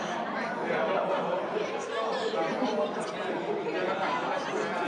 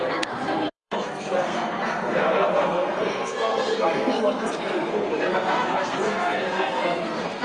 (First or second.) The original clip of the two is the first